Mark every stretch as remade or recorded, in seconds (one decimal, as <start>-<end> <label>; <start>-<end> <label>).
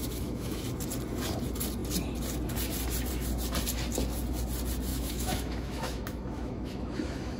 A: 0.0-0.6 remade; 0.6-4.9 recorded; 4.9-7.4 remade